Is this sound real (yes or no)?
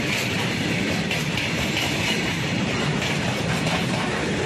no